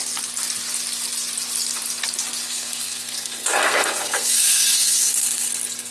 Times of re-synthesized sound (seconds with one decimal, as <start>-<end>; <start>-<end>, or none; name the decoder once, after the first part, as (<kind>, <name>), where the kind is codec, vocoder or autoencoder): 2.4-5.5 (codec, SNAC)